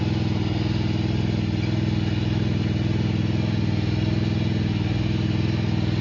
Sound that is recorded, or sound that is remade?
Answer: recorded